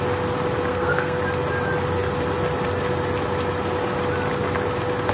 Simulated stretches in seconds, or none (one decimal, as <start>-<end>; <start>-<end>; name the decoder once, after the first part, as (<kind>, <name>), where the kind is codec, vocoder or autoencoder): 0.7-1.2 (codec, SNAC)